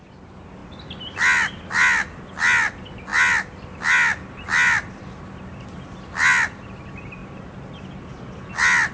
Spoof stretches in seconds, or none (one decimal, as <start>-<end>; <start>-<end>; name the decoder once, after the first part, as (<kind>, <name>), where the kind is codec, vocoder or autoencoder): none